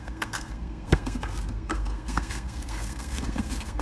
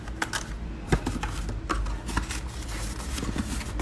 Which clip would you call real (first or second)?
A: second